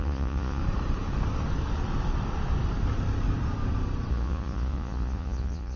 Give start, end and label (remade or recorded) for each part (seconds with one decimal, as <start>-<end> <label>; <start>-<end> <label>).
0.0-0.6 remade; 0.6-4.1 recorded; 4.1-5.8 remade